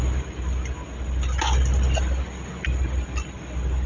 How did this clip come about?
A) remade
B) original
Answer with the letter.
B